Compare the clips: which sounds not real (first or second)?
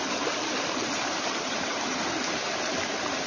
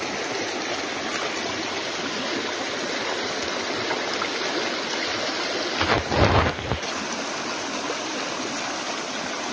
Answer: first